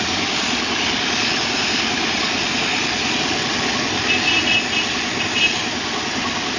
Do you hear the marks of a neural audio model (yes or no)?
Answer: no